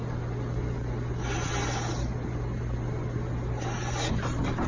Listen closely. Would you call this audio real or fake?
real